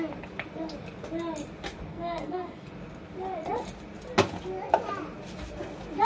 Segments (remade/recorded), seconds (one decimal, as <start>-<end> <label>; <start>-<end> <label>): 0.0-1.9 recorded; 1.9-2.7 remade; 2.7-6.0 recorded